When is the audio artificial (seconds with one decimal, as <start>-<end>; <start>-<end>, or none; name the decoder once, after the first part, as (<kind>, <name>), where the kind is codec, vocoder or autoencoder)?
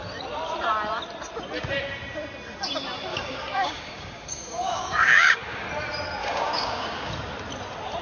3.1-5.7 (codec, DAC); 6.2-7.1